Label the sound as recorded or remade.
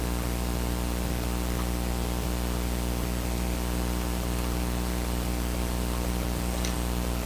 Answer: recorded